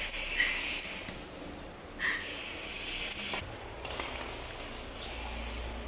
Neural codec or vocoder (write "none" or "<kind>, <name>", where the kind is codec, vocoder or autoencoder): none